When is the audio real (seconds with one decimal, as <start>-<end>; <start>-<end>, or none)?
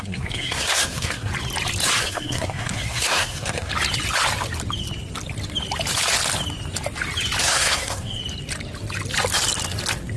1.3-2.0; 3.7-7.4; 8.2-10.2